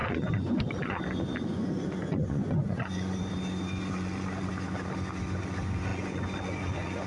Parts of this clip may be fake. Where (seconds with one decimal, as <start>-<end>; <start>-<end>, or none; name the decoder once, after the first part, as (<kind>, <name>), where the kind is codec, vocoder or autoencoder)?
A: 0.0-1.0 (vocoder, Vocos); 1.5-3.3; 3.8-4.5; 5.9-7.1